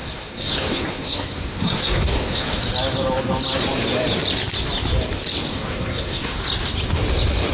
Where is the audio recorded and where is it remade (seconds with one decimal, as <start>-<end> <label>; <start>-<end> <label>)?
0.0-2.6 remade; 2.6-5.5 recorded; 5.5-6.4 remade; 6.4-7.5 recorded